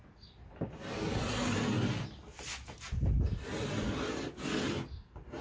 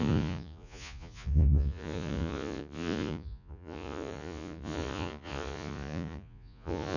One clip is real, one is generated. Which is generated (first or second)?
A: second